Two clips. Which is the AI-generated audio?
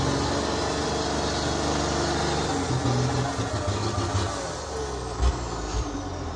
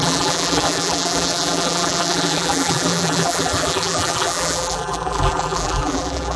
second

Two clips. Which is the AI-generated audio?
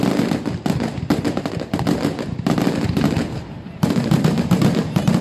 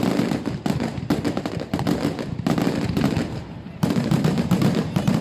second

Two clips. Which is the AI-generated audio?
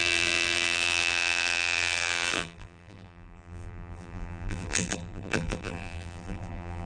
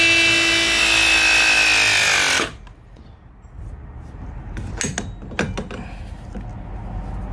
first